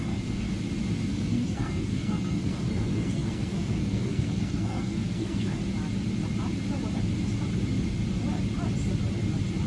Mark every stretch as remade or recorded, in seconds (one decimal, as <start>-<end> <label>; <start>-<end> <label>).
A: 0.0-0.5 remade; 0.5-1.1 recorded; 1.1-5.6 remade; 5.6-9.7 recorded